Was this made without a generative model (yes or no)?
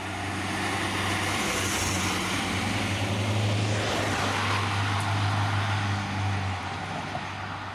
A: yes